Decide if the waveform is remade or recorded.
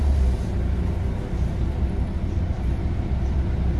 recorded